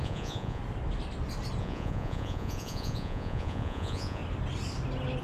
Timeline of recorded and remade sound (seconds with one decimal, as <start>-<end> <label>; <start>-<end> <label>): 0.0-0.6 remade; 0.6-1.6 recorded; 1.6-4.2 remade; 4.2-5.2 recorded